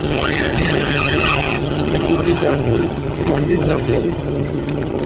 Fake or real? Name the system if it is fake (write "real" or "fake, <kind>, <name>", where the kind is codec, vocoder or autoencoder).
fake, vocoder, HiFi-GAN